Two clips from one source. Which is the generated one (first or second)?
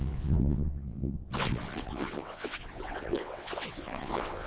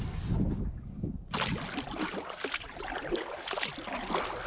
first